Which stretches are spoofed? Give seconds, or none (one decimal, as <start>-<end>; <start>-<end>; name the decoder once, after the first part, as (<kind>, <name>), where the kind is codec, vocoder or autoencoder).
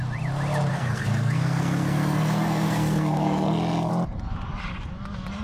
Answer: 0.7-3.9 (codec, SNAC)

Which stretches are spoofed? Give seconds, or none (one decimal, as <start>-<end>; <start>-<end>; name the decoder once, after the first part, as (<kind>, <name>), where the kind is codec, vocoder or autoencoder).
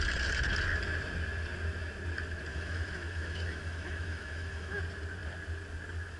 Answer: 2.5-4.8 (autoencoder, DAC-VAE)